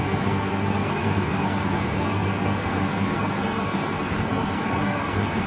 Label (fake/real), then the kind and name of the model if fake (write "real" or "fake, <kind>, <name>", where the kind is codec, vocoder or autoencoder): fake, codec, SNAC